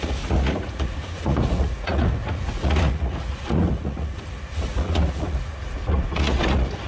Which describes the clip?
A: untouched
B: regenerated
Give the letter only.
B